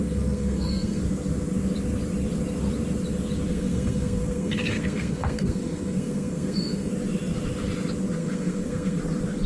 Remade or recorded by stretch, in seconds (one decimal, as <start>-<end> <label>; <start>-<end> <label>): 0.0-1.0 remade; 1.0-3.5 recorded; 3.5-6.9 remade; 6.9-8.2 recorded; 8.2-9.0 remade; 9.0-9.5 recorded

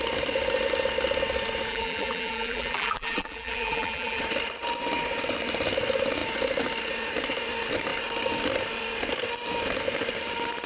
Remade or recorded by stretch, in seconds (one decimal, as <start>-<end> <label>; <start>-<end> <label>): 0.0-1.7 recorded; 1.7-4.2 remade; 4.2-10.7 recorded

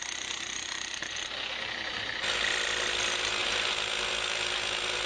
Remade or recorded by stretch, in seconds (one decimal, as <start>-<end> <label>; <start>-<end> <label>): 0.0-5.1 recorded

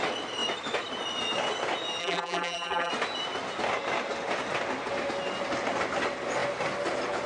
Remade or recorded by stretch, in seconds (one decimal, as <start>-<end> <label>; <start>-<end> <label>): 0.0-2.0 recorded; 2.0-2.9 remade; 2.9-7.3 recorded

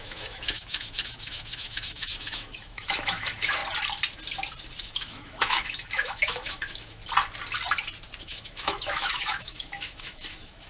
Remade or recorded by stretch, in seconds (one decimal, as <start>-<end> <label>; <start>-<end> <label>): 0.0-3.6 remade; 3.6-4.8 recorded; 4.8-7.0 remade; 7.0-8.2 recorded; 8.2-10.7 remade

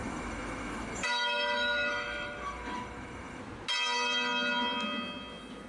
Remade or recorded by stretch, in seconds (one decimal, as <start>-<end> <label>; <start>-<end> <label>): 0.0-3.4 remade; 3.4-5.7 recorded

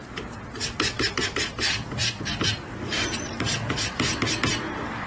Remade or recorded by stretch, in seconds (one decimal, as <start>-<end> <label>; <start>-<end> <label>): 0.0-1.2 recorded; 1.2-3.0 remade; 3.0-3.5 recorded; 3.5-4.6 remade; 4.6-5.1 recorded

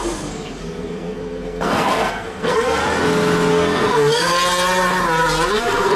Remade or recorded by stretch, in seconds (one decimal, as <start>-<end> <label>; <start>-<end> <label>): 0.0-2.8 remade; 2.8-3.5 recorded; 3.5-4.3 remade; 4.3-5.5 recorded; 5.5-6.0 remade